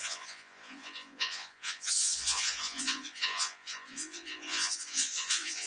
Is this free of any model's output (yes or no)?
no